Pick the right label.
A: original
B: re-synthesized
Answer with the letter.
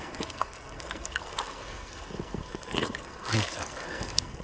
B